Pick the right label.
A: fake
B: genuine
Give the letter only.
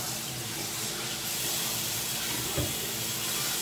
B